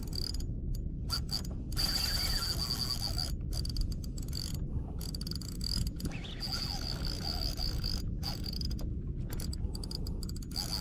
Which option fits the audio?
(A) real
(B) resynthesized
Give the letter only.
A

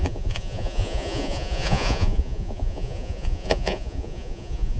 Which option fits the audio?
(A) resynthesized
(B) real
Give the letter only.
A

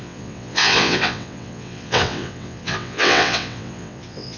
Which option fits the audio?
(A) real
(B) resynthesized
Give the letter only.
B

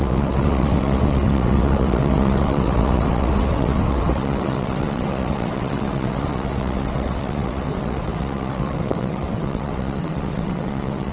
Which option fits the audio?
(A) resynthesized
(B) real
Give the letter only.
A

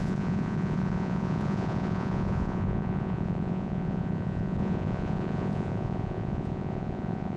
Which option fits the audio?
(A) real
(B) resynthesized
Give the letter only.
B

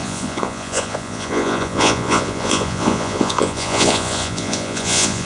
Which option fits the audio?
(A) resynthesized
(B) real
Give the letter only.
A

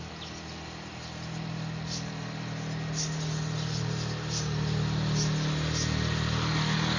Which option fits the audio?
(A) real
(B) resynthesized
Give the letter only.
A